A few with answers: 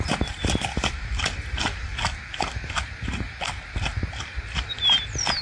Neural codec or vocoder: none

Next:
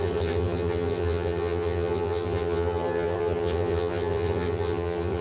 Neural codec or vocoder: vocoder, HiFi-GAN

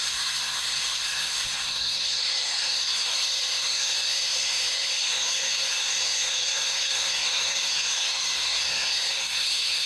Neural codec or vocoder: codec, SNAC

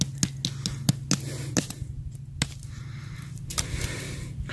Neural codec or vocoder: none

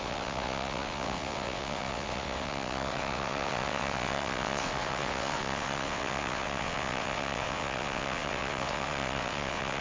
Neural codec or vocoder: vocoder, WaveNeXt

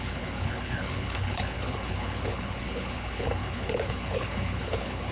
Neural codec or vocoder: codec, HILCodec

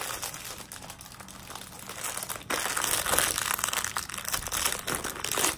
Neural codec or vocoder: none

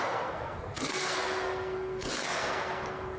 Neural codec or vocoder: codec, SNAC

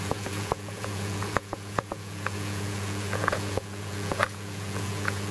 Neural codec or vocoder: vocoder, Vocos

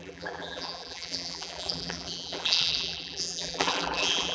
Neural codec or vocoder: vocoder, BigVGAN v2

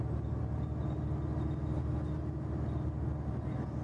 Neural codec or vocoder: none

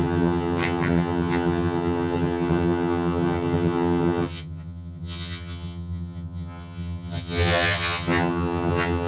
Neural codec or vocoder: vocoder, HiFi-GAN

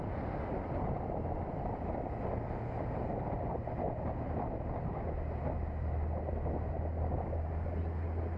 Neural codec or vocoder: none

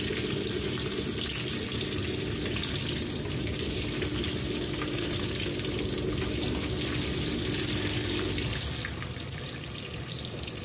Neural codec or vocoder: none